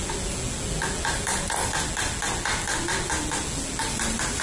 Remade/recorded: recorded